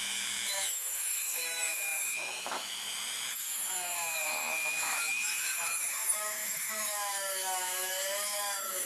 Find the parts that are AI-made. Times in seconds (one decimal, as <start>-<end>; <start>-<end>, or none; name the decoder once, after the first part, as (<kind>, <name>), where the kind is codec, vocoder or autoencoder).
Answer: 0.0-8.9 (autoencoder, DAC-VAE)